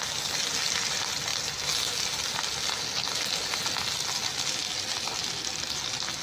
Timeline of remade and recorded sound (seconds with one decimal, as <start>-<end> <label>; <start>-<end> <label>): 0.0-6.2 recorded